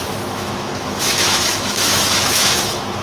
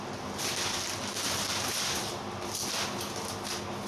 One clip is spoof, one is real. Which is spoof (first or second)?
first